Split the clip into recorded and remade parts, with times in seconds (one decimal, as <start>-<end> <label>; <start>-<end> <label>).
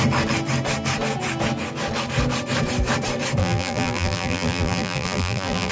0.0-3.4 recorded; 3.4-5.7 remade